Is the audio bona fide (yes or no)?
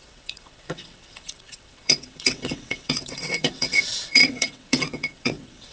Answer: no